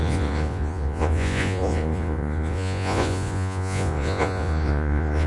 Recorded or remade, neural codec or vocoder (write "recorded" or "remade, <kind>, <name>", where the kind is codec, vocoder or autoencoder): remade, vocoder, Vocos